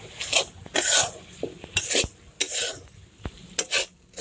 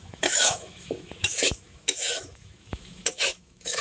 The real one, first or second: first